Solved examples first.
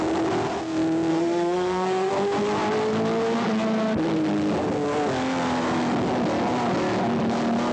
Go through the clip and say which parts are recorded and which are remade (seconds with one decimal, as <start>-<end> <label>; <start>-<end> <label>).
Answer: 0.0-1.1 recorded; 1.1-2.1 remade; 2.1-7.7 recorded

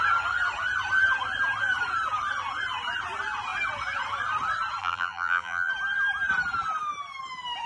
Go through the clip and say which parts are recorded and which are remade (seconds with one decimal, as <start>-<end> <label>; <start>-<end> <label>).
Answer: 0.0-4.8 recorded; 4.8-5.7 remade; 5.7-7.7 recorded

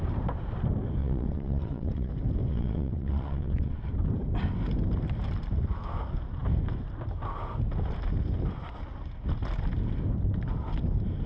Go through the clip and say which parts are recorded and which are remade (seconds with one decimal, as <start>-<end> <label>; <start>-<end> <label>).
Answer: 0.0-1.0 recorded; 1.0-2.1 remade; 2.1-2.5 recorded; 2.5-3.9 remade; 3.9-11.3 recorded

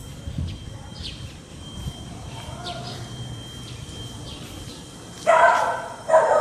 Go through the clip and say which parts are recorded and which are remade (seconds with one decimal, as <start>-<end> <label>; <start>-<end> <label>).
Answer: 0.0-0.7 recorded; 0.7-6.4 remade

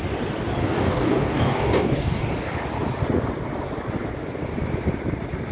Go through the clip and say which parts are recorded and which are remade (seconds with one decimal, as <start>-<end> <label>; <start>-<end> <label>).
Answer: 0.0-0.6 recorded; 0.6-2.2 remade; 2.2-5.5 recorded

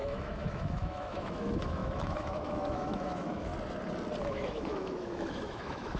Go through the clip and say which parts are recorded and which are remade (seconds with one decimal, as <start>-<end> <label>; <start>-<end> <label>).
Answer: 0.0-3.5 remade; 3.5-4.2 recorded; 4.2-6.0 remade